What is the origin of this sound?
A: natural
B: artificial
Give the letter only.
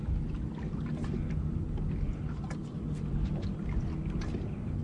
A